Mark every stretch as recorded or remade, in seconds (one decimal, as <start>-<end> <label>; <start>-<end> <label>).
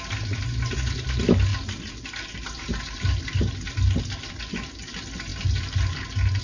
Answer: 0.0-6.4 recorded